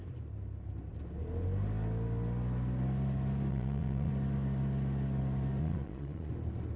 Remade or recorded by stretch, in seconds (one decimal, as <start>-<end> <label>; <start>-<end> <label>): 0.0-3.5 recorded; 3.5-4.1 remade; 4.1-5.6 recorded; 5.6-6.3 remade; 6.3-6.8 recorded